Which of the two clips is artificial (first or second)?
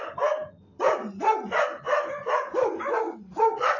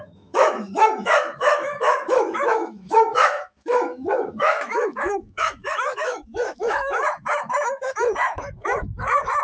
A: second